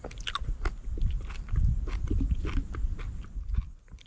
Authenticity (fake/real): real